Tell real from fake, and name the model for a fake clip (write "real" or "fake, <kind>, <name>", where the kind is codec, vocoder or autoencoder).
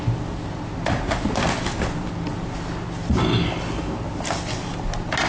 real